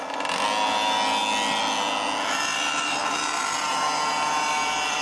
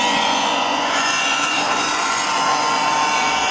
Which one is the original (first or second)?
first